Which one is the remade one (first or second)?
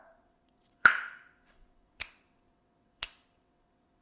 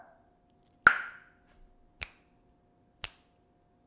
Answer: first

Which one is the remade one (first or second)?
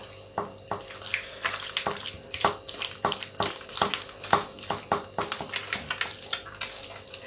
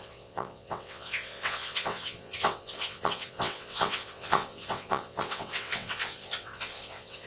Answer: second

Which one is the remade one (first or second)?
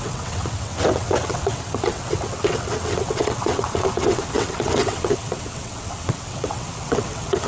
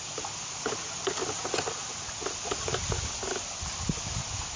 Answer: first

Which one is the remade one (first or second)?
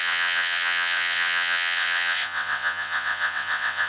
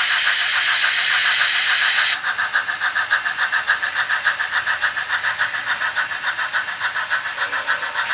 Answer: first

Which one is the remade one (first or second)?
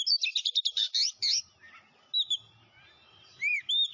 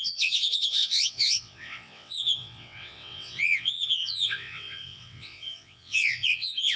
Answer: second